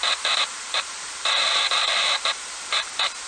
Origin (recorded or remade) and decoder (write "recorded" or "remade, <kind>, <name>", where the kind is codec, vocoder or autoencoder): remade, vocoder, BigVGAN v2